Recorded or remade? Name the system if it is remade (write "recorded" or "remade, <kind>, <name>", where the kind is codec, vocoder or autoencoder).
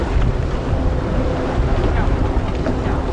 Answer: recorded